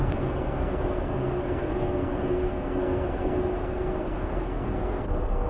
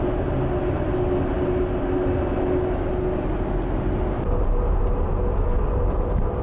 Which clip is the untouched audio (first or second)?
second